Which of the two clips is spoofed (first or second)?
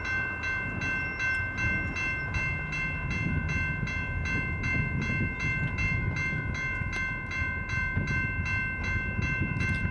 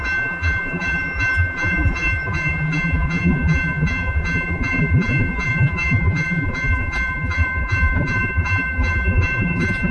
second